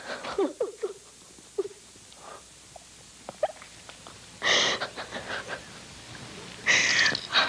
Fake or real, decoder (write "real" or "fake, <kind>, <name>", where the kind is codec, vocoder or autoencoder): real